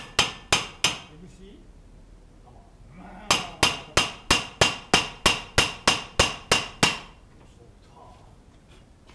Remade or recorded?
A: recorded